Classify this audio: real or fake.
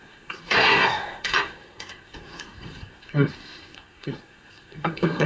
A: fake